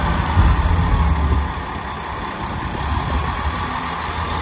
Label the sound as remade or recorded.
recorded